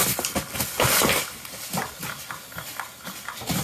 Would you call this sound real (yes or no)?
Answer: yes